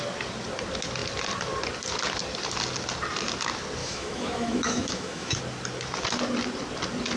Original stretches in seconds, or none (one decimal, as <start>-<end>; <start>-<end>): 0.0-3.8; 5.4-7.2